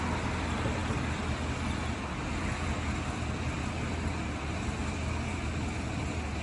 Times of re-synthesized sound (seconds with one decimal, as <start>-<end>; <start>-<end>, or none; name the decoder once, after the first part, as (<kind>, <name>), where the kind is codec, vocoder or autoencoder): none